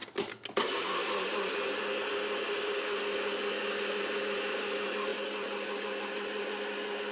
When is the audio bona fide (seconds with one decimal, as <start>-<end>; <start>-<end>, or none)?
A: 0.0-7.1

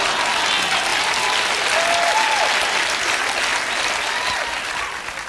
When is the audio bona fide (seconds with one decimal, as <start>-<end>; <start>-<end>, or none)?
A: 0.0-5.3

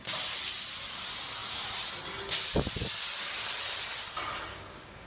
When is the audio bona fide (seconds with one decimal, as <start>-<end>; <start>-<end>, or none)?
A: 0.0-4.5

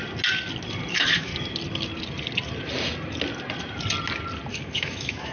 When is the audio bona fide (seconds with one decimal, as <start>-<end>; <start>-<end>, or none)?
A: 0.0-0.9; 1.3-4.5

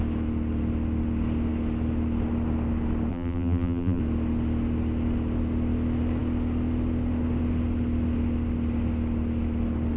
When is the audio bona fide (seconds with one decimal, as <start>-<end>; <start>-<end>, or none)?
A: 0.0-3.1; 4.0-10.0

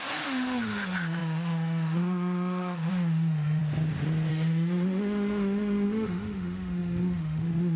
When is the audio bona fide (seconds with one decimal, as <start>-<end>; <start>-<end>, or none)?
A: 3.6-4.3

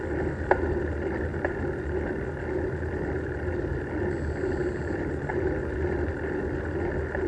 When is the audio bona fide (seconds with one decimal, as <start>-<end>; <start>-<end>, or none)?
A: 0.0-4.6; 5.3-7.3